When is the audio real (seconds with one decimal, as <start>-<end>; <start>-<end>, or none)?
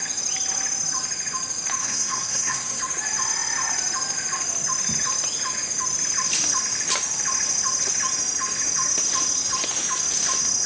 0.0-1.8; 2.8-10.7